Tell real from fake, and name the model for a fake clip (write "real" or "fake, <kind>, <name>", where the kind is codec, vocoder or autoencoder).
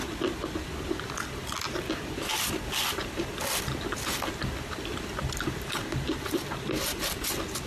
real